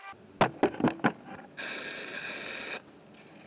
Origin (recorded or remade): recorded